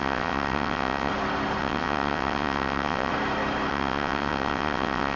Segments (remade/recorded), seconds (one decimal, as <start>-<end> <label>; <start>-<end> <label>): 0.0-1.1 remade; 1.1-1.6 recorded; 1.6-3.1 remade; 3.1-3.7 recorded; 3.7-5.2 remade